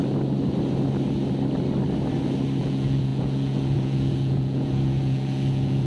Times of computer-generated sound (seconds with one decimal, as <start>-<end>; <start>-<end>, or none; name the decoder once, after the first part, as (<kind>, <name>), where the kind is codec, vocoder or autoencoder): 2.6-5.9 (vocoder, Vocos)